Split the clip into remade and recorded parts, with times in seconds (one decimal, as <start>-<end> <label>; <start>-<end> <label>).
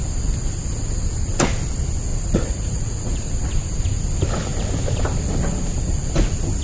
0.0-2.1 recorded; 2.1-3.8 remade; 3.8-6.6 recorded